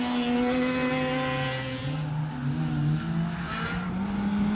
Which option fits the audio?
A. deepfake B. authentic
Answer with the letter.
B